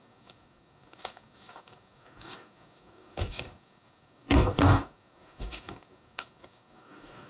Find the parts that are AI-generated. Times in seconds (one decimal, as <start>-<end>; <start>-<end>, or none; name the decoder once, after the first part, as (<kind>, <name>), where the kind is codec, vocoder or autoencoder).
0.0-7.3 (codec, DAC)

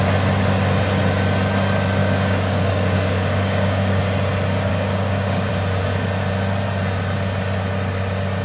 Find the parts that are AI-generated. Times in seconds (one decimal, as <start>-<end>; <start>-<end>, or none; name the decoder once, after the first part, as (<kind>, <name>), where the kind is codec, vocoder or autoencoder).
2.0-4.0 (codec, DAC); 4.7-5.5

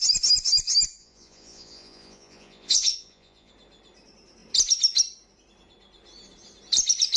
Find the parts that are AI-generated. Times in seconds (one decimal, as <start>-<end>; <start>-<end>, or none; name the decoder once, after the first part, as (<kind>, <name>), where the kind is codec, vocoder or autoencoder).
1.0-3.5 (vocoder, Vocos)

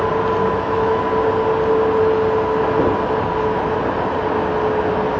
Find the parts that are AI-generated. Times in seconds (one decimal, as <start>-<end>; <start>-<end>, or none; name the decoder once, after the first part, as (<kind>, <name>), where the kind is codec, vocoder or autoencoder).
0.4-1.0 (autoencoder, DAC-VAE)